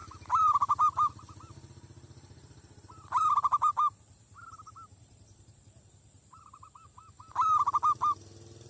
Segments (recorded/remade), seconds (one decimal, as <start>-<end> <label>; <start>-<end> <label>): 0.0-3.7 remade; 3.7-4.9 recorded; 4.9-7.7 remade; 7.7-8.7 recorded